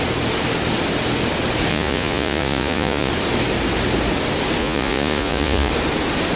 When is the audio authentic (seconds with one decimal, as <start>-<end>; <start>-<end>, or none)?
0.0-1.7; 3.1-4.6; 5.7-6.4